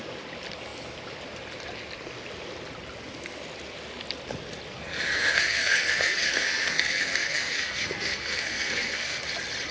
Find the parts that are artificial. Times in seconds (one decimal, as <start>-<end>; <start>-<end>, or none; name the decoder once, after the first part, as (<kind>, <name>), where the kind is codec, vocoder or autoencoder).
4.7-9.2 (codec, SNAC)